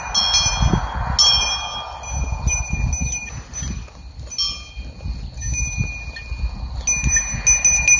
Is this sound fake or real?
real